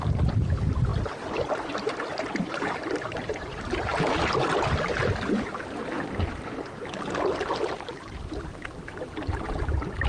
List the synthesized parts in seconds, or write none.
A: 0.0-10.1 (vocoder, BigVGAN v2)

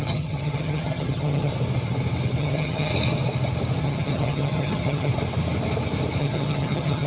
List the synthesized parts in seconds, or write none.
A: 0.0-1.5 (vocoder, HiFi-GAN); 2.4-2.9; 3.8-5.1; 6.2-7.1

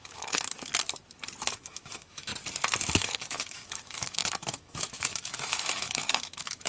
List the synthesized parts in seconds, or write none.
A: 0.0-0.7 (autoencoder, DAC-VAE); 1.4-2.3; 2.8-6.7

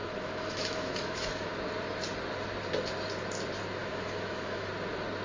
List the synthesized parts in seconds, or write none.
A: 0.0-1.5 (autoencoder, DAC-VAE); 3.8-4.7